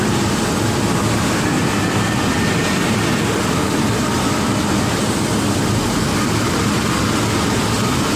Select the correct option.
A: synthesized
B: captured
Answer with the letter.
B